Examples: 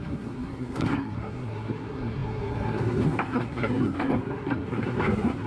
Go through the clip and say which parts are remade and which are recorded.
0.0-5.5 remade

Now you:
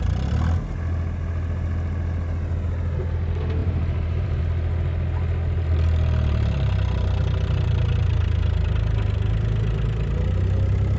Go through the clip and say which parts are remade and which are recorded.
0.0-3.6 recorded; 3.6-4.4 remade; 4.4-11.0 recorded

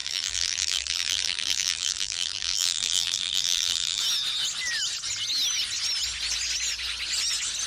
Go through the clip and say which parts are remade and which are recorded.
0.0-4.0 remade; 4.0-7.7 recorded

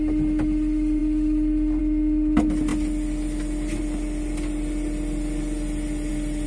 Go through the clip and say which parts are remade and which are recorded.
0.0-6.5 recorded

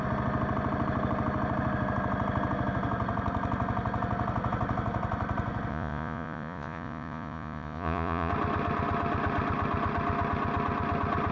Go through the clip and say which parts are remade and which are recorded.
0.0-5.7 recorded; 5.7-8.3 remade; 8.3-11.3 recorded

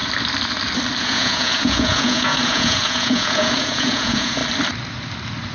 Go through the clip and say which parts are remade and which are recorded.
0.0-1.0 recorded; 1.0-4.4 remade; 4.4-5.5 recorded

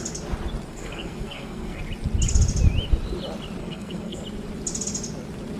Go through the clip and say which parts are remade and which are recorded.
0.0-0.7 recorded; 0.7-1.8 remade; 1.8-3.6 recorded; 3.6-4.2 remade; 4.2-5.6 recorded

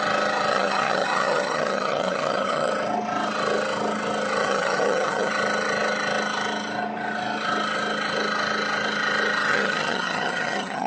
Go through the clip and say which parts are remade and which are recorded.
0.0-0.5 recorded; 0.5-2.7 remade; 2.7-4.4 recorded; 4.4-5.3 remade; 5.3-9.5 recorded; 9.5-10.9 remade